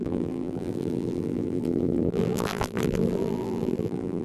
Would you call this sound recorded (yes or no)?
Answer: no